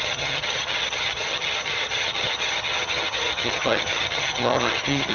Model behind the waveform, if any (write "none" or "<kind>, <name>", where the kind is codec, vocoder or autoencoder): vocoder, HiFi-GAN